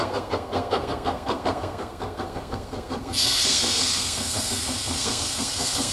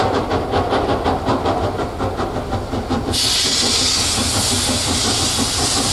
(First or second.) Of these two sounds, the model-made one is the first